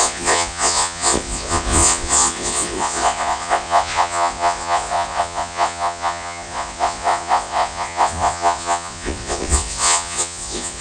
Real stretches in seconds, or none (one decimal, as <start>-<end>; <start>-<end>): none